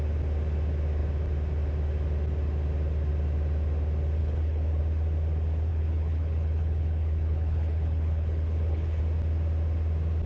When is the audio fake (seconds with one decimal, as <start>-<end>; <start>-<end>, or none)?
4.2-4.8; 5.7-9.0